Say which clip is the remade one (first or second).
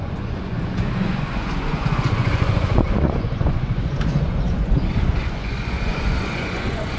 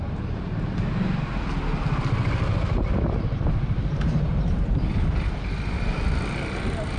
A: first